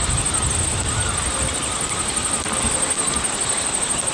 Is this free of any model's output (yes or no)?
yes